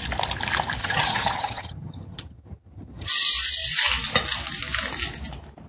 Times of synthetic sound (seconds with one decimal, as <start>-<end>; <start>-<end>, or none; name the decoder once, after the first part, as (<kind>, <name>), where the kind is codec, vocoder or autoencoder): 0.8-3.1 (vocoder, HiFi-GAN)